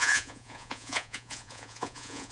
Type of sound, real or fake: fake